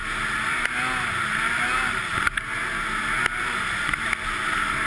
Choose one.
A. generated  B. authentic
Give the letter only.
B